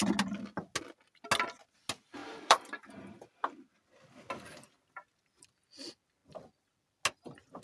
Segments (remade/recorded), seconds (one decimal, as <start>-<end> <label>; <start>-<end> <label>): 0.0-2.2 recorded; 2.2-3.4 remade; 3.4-7.6 recorded